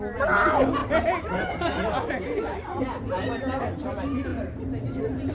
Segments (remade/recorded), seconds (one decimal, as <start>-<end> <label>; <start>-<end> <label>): 0.0-5.3 recorded